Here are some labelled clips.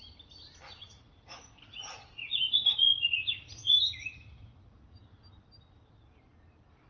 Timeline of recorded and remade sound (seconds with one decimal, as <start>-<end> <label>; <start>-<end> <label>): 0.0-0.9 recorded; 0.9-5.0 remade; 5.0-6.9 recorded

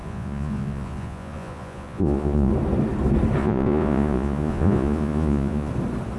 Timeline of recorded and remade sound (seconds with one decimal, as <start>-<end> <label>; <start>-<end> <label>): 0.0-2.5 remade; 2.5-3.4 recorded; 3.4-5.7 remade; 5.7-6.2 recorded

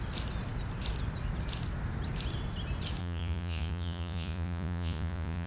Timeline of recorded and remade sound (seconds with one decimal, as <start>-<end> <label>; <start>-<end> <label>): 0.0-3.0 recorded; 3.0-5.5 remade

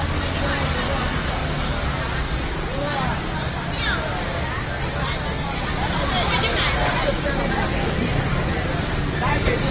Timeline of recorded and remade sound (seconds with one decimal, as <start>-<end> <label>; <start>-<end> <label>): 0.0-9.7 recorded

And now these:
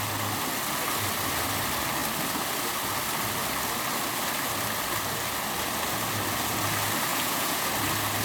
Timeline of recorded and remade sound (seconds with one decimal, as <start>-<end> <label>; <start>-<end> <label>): 0.0-7.1 recorded; 7.1-7.7 remade; 7.7-8.2 recorded

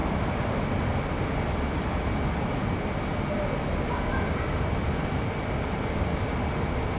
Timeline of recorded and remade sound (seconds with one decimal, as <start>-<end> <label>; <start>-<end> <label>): 0.0-7.0 recorded

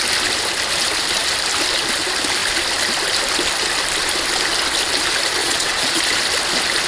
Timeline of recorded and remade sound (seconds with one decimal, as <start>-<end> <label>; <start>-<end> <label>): 0.0-5.4 recorded; 5.4-6.0 remade; 6.0-6.9 recorded